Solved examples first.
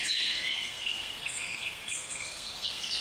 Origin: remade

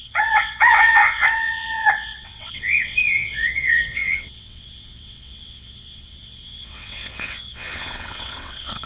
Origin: remade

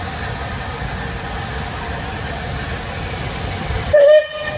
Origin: recorded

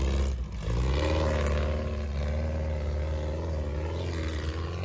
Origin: recorded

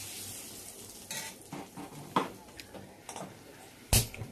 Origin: recorded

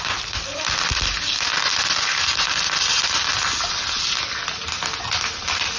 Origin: recorded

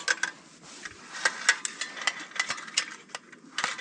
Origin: recorded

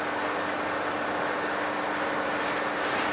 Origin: recorded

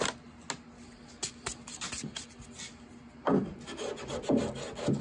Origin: recorded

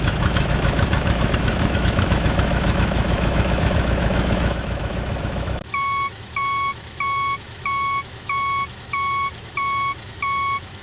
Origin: remade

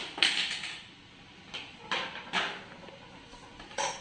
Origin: recorded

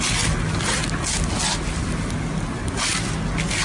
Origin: recorded